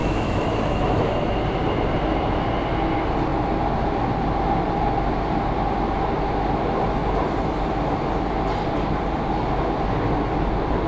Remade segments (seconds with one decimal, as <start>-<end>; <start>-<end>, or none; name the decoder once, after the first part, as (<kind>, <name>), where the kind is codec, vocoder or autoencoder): 0.0-1.1 (autoencoder, DAC-VAE)